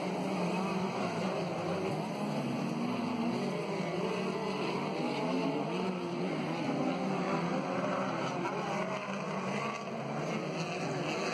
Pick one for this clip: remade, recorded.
recorded